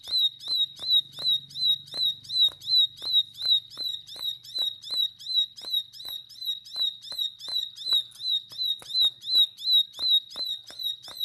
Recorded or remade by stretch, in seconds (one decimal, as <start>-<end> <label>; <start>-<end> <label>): 0.0-1.7 recorded; 1.7-6.3 remade; 6.3-11.2 recorded